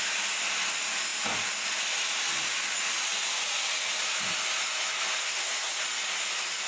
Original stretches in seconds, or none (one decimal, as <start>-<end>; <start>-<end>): 0.0-5.2; 5.8-6.7